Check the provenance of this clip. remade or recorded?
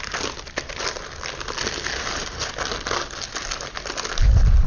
recorded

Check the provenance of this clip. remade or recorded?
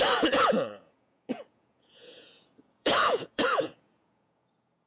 remade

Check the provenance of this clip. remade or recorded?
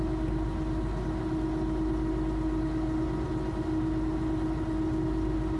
recorded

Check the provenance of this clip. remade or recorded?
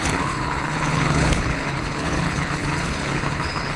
remade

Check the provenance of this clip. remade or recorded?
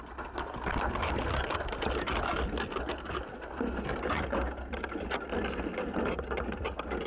recorded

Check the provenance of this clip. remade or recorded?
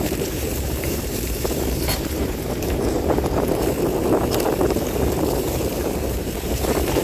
remade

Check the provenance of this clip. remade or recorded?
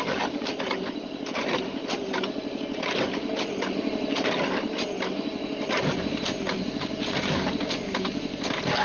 remade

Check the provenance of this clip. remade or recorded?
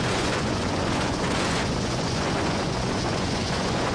remade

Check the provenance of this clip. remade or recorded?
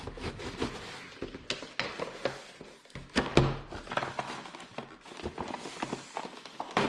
recorded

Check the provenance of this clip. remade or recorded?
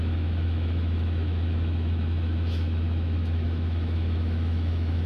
remade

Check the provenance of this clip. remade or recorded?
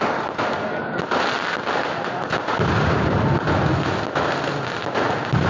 recorded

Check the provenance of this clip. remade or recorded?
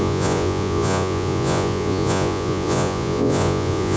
remade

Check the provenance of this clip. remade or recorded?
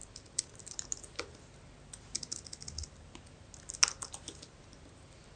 recorded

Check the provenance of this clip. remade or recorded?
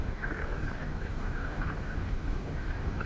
remade